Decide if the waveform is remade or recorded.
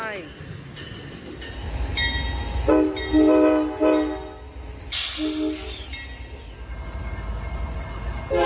recorded